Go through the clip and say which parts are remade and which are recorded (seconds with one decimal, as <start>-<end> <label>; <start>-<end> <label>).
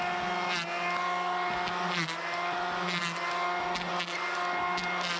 0.0-5.2 recorded